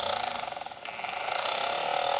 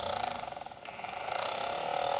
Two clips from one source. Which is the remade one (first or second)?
second